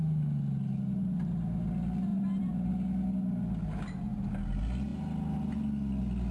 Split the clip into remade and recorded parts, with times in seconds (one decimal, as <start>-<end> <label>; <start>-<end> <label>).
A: 0.0-2.1 recorded; 2.1-2.7 remade; 2.7-6.3 recorded